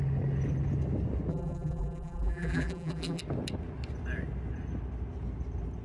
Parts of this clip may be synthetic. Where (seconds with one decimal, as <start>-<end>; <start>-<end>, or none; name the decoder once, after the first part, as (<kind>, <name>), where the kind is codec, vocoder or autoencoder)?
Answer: 1.3-3.2 (vocoder, BigVGAN v2)